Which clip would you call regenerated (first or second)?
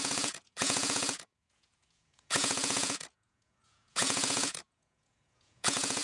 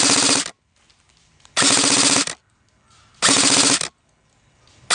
first